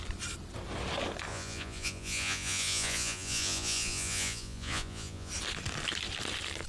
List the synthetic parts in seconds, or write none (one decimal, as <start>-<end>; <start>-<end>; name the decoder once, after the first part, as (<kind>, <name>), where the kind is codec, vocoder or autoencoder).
1.3-5.3 (vocoder, Vocos)